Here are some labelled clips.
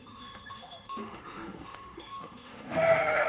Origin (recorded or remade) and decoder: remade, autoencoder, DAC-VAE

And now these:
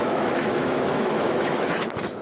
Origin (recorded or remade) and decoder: remade, autoencoder, DAC-VAE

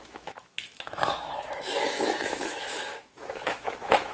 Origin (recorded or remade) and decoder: remade, autoencoder, DAC-VAE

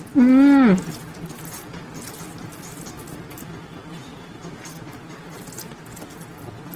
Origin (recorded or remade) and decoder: recorded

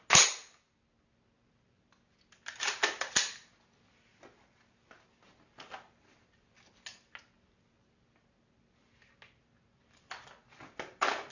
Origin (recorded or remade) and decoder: recorded